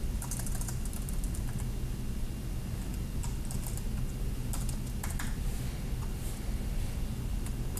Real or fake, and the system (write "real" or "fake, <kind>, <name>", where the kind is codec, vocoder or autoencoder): real